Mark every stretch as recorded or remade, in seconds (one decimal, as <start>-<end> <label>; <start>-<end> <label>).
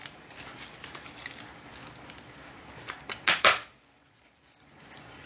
0.0-3.2 recorded; 3.2-5.3 remade